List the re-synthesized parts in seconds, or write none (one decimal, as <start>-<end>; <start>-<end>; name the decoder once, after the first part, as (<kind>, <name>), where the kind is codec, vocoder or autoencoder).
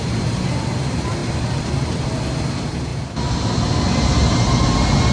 none